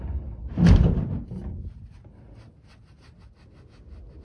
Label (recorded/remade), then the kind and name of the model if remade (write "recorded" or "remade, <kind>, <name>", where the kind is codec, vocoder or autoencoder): recorded